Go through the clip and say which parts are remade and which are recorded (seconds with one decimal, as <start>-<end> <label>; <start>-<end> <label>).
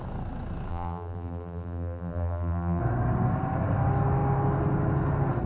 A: 0.0-0.7 recorded; 0.7-2.8 remade; 2.8-5.5 recorded